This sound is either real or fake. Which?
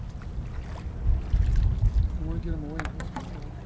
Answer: real